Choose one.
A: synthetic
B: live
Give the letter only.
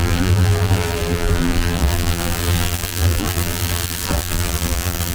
A